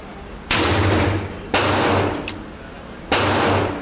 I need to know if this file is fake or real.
real